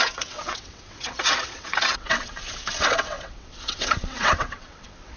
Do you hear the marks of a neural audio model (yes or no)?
yes